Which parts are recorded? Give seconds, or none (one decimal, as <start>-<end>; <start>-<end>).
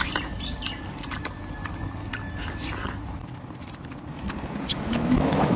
0.0-4.7